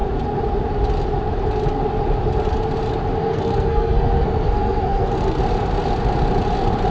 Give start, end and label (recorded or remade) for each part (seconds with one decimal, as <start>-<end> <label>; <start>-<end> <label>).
0.0-3.2 recorded; 3.2-5.4 remade; 5.4-6.9 recorded